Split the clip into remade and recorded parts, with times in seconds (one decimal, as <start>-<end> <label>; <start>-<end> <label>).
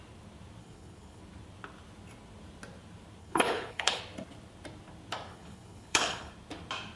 0.0-0.6 recorded; 0.6-1.2 remade; 1.2-3.2 recorded; 3.2-4.0 remade; 4.0-5.3 recorded; 5.3-6.3 remade; 6.3-7.0 recorded